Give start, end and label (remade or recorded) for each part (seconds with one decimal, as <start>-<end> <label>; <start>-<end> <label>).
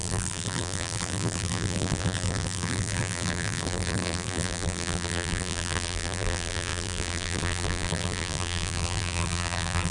0.0-9.9 remade